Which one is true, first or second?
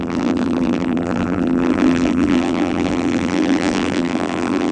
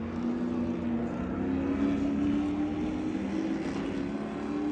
second